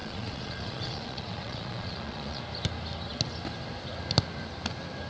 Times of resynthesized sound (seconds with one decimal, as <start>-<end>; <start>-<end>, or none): 0.0-2.4

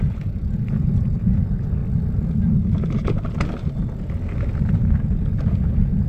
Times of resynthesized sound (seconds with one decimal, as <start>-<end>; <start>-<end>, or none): 0.0-1.8; 5.5-6.1

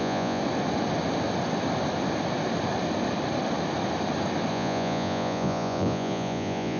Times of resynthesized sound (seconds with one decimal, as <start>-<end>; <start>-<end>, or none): 0.0-0.4; 4.5-6.8